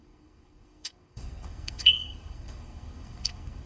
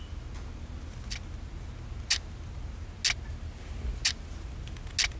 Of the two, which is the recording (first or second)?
second